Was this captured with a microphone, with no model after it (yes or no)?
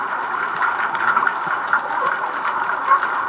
yes